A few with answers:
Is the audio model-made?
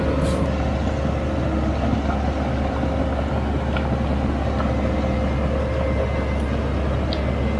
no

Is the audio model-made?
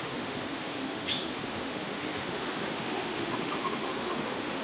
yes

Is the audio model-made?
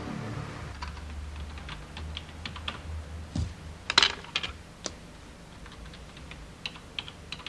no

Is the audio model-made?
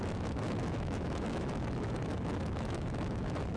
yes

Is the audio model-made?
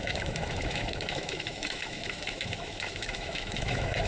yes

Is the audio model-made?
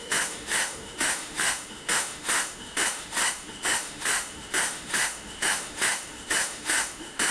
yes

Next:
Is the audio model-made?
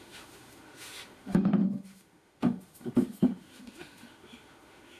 yes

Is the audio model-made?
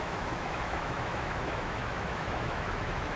yes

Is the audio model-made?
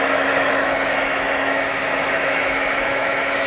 yes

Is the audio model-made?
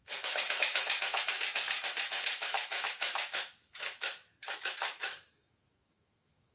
yes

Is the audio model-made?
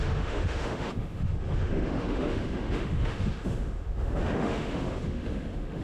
yes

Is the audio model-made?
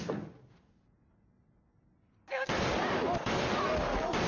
no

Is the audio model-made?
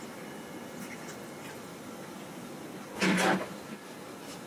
no